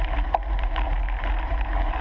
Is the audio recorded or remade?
remade